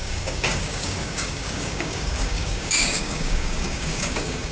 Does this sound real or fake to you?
fake